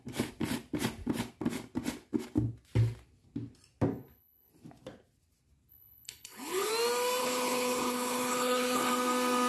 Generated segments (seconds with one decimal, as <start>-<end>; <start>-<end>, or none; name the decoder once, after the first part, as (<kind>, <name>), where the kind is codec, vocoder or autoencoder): 3.9-4.5 (codec, HILCodec); 5.7-6.7; 7.2-8.9